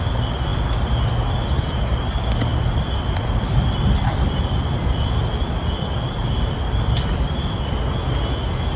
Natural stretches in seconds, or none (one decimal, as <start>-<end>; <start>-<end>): 0.0-2.5; 7.8-8.8